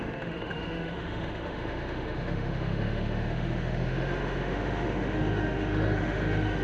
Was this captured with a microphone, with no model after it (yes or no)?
no